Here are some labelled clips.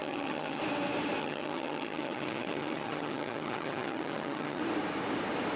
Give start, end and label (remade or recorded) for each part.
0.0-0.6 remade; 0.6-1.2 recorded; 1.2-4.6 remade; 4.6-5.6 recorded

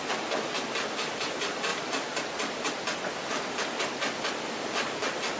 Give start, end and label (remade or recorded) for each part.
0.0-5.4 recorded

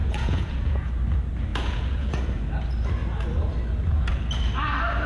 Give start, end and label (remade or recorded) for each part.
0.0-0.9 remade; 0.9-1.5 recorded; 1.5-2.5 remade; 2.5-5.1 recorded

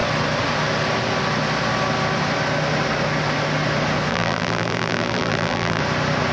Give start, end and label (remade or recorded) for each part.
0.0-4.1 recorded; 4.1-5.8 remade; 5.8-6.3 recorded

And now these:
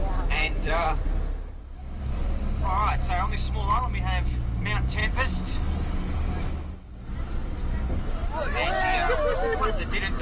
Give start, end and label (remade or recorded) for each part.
0.0-2.6 remade; 2.6-10.2 recorded

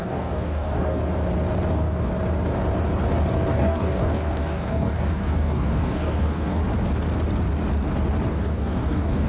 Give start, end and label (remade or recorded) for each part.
0.0-1.0 remade; 1.0-1.7 recorded; 1.7-2.1 remade; 2.1-3.5 recorded; 3.5-6.6 remade; 6.6-8.3 recorded; 8.3-9.3 remade